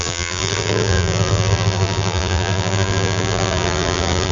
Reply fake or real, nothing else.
fake